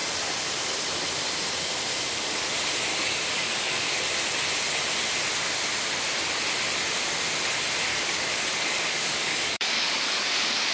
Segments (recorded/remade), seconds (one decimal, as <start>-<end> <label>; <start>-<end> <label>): 0.0-2.9 recorded; 2.9-4.0 remade; 4.0-7.9 recorded; 7.9-10.7 remade